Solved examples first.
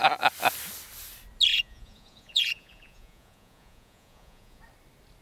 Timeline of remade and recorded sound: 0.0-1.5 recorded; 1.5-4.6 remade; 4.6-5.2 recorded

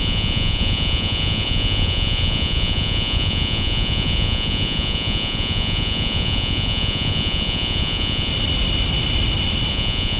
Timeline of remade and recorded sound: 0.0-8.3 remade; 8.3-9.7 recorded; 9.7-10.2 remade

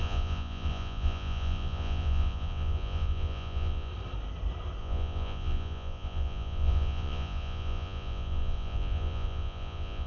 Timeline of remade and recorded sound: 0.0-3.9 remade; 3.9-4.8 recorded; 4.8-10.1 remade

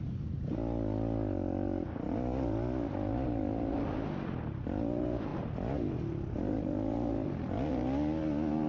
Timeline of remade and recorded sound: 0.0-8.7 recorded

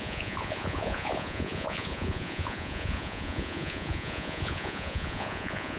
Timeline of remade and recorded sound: 0.0-5.8 remade

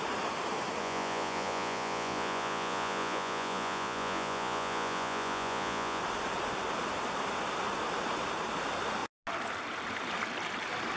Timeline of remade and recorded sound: 0.0-0.8 recorded; 0.8-6.0 remade; 6.0-11.0 recorded

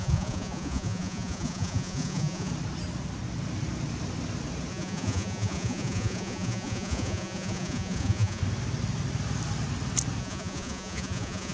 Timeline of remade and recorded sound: 0.0-2.5 remade; 2.5-4.7 recorded; 4.7-8.4 remade; 8.4-10.2 recorded; 10.2-11.5 remade